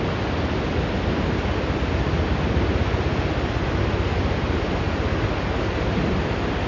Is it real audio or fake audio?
real